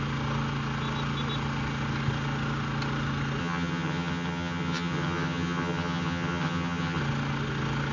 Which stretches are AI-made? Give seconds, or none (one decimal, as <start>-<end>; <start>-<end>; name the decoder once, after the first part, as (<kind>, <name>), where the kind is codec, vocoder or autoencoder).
3.4-7.0 (vocoder, HiFi-GAN)